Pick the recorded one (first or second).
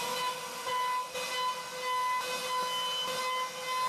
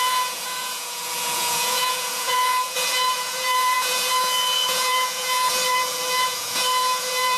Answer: first